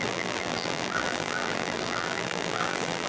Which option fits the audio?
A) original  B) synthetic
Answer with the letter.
B